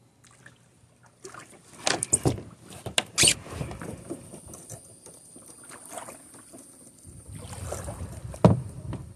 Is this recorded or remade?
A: recorded